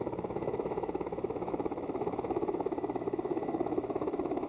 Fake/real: fake